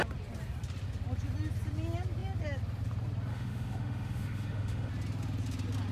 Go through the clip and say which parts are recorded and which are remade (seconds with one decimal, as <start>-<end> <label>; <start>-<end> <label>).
0.0-3.3 recorded; 3.3-4.9 remade; 4.9-5.9 recorded